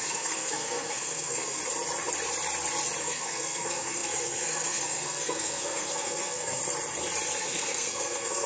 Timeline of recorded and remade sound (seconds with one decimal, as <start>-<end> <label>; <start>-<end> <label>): 0.0-1.6 remade; 1.6-3.0 recorded; 3.0-6.6 remade; 6.6-7.4 recorded; 7.4-8.5 remade